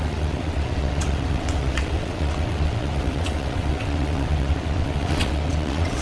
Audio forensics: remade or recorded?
remade